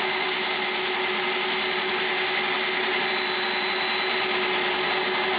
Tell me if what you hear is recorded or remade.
recorded